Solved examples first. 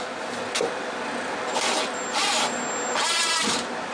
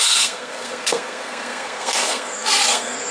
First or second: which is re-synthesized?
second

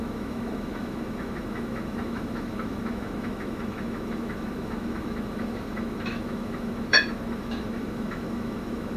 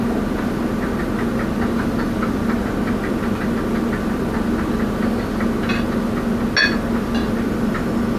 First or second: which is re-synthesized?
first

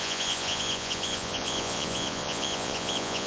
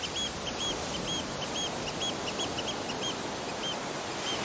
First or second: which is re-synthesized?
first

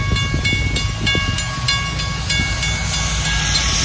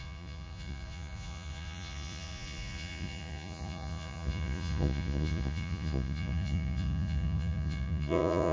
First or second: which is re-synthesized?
second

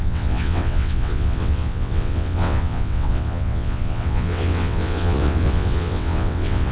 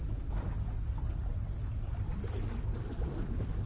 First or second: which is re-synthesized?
first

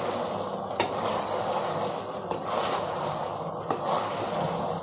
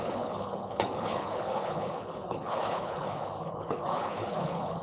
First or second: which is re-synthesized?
second